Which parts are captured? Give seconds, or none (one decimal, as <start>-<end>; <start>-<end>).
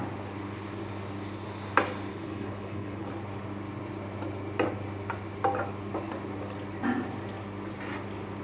0.0-2.1; 3.1-8.4